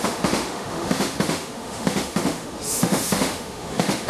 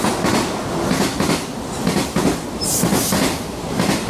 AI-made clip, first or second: first